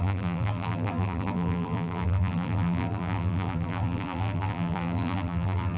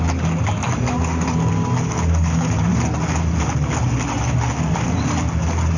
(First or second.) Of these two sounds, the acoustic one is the second